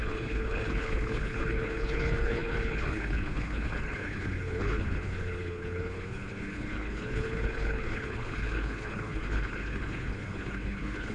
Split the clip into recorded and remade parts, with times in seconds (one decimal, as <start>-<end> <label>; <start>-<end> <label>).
0.0-11.1 remade